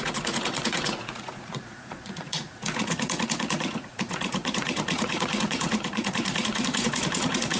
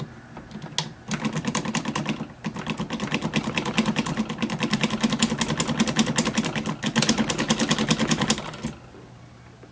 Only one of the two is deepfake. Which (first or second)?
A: first